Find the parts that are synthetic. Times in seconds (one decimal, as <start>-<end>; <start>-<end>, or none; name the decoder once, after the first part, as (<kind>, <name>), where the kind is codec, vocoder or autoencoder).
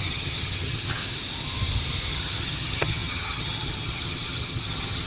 0.0-1.0 (vocoder, HiFi-GAN); 2.1-5.1